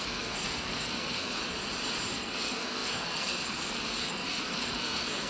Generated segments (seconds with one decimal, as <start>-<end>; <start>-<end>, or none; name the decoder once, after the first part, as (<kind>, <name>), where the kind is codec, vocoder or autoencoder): 0.0-1.4 (codec, SNAC); 2.1-5.3